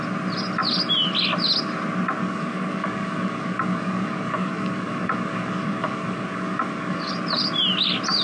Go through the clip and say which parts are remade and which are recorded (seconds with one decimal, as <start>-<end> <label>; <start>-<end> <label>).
0.0-2.2 recorded; 2.2-7.1 remade; 7.1-8.2 recorded